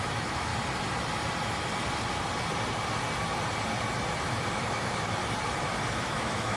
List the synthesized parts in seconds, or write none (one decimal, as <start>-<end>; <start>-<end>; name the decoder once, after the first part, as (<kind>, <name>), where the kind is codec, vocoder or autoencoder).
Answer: 0.0-0.5 (autoencoder, DAC-VAE); 4.5-5.2; 6.0-6.6

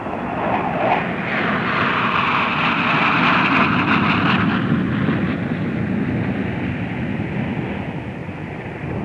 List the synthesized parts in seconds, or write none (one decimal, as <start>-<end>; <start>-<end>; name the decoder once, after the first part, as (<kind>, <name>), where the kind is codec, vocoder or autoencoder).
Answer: 8.2-9.0 (vocoder, BigVGAN v2)

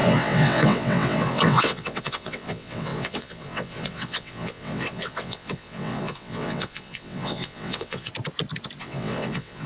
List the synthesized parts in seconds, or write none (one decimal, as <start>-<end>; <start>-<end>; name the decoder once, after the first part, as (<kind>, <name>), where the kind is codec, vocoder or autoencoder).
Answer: 0.0-8.1 (vocoder, WaveNeXt); 8.8-9.7

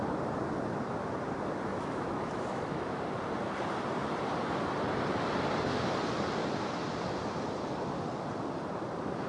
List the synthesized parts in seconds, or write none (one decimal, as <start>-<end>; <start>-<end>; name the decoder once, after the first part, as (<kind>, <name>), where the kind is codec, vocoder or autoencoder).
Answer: 1.7-3.0 (autoencoder, DAC-VAE)

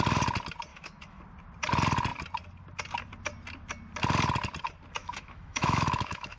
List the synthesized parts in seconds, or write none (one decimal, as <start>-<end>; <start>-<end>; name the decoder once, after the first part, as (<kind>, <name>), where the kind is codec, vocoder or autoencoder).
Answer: 0.7-1.2 (autoencoder, DAC-VAE); 5.0-6.4

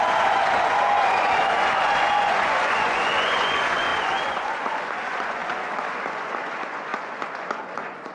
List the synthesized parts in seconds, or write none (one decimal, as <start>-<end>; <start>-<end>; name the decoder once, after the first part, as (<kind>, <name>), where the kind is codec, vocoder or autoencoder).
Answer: 0.0-8.1 (vocoder, Vocos)